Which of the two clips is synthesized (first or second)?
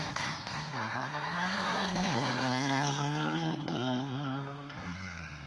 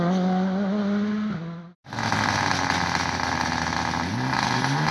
first